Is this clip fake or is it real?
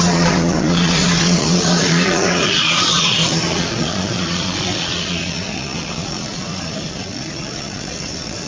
fake